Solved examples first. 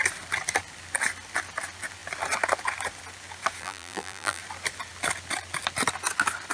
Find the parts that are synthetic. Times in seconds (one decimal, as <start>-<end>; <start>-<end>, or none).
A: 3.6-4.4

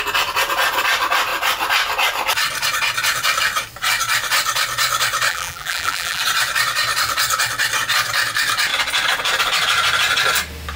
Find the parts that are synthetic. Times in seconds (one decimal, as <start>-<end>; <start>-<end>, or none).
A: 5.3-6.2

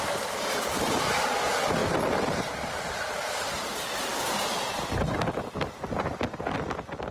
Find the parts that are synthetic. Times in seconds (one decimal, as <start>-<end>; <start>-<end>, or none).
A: 0.0-1.8; 2.7-7.1

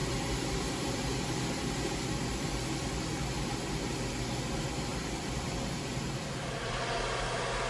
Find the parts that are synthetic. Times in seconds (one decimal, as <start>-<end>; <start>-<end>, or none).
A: 0.0-3.8; 4.9-6.9